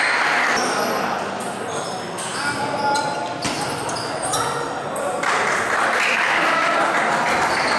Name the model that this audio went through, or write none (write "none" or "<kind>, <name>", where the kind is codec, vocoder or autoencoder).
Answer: none